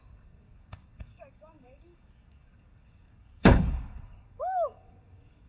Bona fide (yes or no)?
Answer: no